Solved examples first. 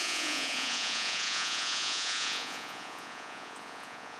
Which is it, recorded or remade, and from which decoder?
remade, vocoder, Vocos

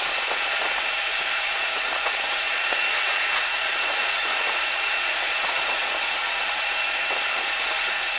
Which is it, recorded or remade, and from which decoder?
remade, vocoder, Vocos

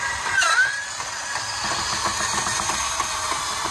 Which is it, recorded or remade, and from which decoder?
recorded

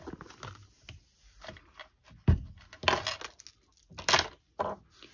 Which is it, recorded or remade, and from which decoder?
recorded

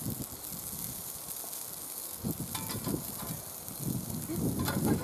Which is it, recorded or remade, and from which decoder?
recorded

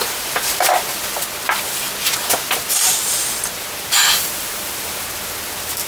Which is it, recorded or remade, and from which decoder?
recorded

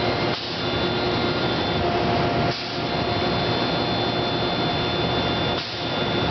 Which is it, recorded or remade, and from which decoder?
recorded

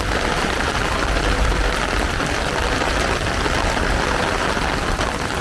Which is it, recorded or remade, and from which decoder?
remade, vocoder, BigVGAN v2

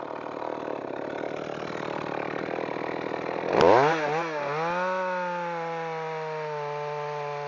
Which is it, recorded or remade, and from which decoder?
recorded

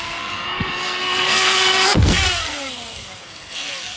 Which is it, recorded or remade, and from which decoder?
remade, codec, SNAC